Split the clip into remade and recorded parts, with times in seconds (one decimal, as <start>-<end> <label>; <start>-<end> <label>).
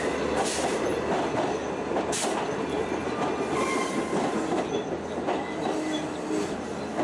0.0-7.0 recorded